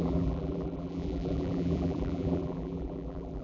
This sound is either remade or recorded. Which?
remade